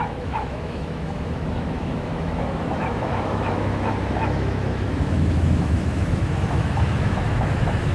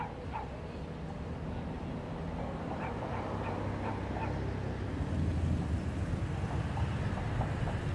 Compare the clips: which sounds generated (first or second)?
first